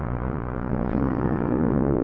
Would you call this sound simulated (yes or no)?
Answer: yes